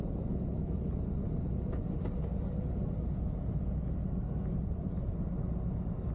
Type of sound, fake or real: real